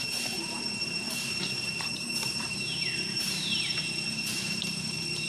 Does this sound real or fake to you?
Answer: fake